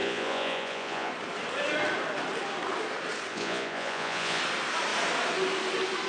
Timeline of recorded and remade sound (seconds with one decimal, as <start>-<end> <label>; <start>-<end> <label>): 0.0-1.1 remade; 1.1-3.3 recorded; 3.3-4.4 remade; 4.4-6.1 recorded